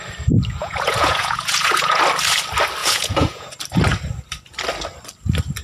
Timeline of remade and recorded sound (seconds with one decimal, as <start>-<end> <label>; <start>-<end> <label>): 0.0-0.6 recorded; 0.6-2.0 remade; 2.0-2.8 recorded; 2.8-3.5 remade; 3.5-5.6 recorded